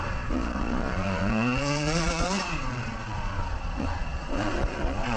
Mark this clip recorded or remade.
remade